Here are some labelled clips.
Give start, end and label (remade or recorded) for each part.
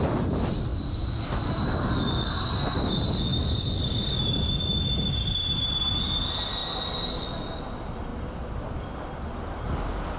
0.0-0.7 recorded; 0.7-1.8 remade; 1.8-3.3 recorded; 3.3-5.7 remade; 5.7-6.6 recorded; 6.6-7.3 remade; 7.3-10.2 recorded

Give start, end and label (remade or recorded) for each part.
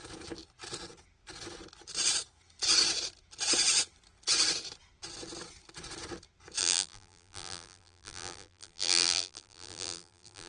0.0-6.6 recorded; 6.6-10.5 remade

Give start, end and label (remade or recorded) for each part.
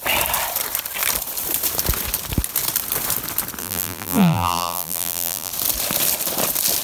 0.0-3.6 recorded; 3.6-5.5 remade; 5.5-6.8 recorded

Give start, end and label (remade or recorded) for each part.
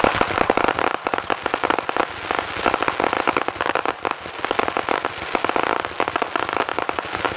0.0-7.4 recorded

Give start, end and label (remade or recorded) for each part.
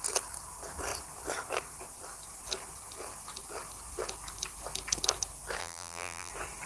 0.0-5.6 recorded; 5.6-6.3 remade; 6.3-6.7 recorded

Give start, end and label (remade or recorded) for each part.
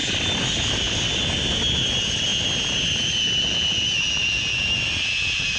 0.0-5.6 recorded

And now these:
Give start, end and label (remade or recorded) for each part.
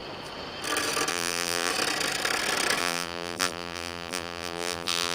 0.0-1.1 recorded; 1.1-1.7 remade; 1.7-2.8 recorded; 2.8-5.1 remade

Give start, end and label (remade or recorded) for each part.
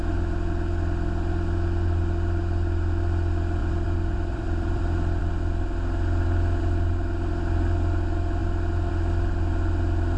0.0-3.6 recorded; 3.6-5.2 remade; 5.2-10.2 recorded